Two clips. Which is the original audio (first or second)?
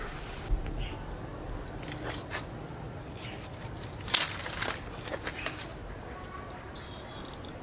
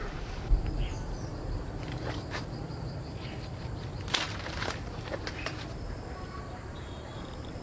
first